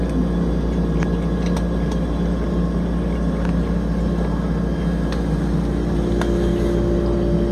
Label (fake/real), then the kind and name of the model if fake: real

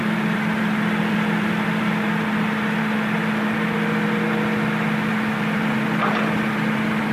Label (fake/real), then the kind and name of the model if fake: real